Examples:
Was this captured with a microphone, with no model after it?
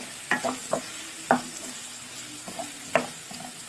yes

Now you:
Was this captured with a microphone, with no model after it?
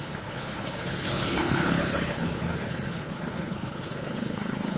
no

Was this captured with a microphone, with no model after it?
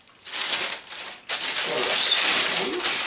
yes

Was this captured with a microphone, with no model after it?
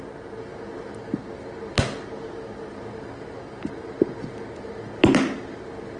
yes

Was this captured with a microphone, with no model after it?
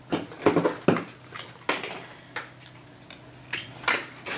yes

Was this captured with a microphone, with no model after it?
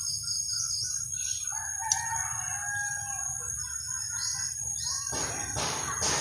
yes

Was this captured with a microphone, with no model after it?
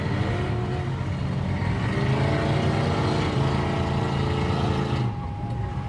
yes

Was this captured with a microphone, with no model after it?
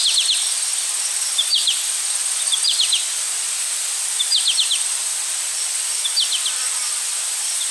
yes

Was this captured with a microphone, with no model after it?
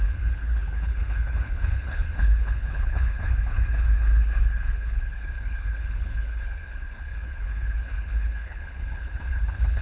no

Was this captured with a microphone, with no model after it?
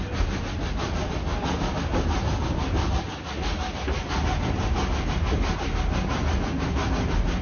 yes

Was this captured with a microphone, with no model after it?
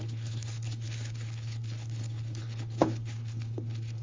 no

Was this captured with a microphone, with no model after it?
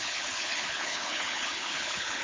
no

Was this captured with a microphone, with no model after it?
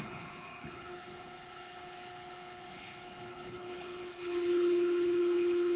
no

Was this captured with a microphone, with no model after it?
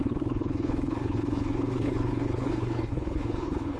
no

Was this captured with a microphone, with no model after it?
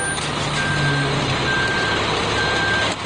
yes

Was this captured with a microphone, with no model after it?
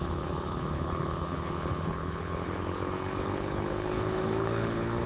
no